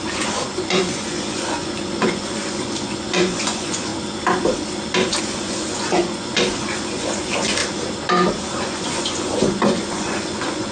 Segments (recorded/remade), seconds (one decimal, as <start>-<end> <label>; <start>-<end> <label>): 0.0-3.9 remade; 3.9-5.2 recorded; 5.2-7.6 remade; 7.6-8.6 recorded; 8.6-10.7 remade